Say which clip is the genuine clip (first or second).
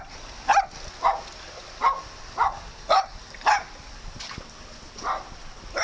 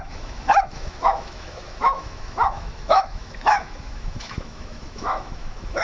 first